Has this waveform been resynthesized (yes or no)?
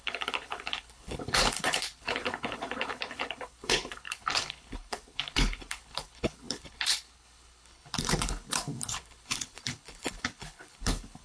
yes